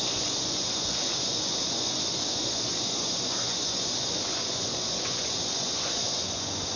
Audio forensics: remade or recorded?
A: remade